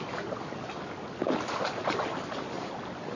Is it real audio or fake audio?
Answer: real